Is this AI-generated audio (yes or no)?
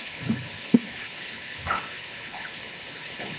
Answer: yes